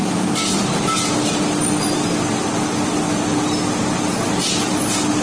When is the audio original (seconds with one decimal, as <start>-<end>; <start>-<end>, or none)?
0.0-5.2